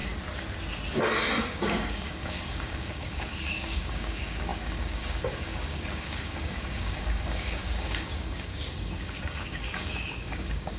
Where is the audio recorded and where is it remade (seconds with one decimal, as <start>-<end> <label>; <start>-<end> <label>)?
0.0-1.4 recorded; 1.4-10.8 remade